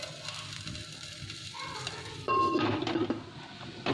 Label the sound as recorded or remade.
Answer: recorded